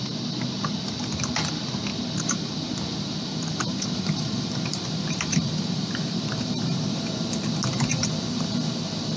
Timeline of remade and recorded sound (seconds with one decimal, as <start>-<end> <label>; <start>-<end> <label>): 0.0-1.9 recorded; 1.9-7.0 remade; 7.0-9.2 recorded